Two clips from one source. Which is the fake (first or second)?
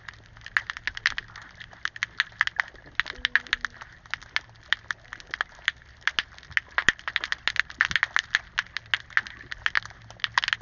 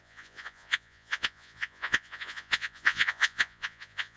second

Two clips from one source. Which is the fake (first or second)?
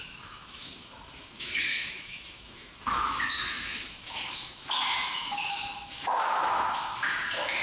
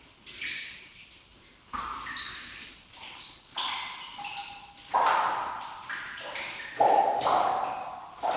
first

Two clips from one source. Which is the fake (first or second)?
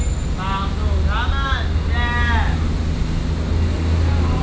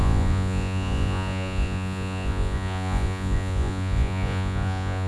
second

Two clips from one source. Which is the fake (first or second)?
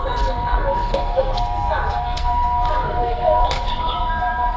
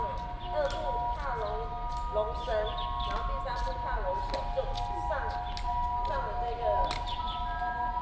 first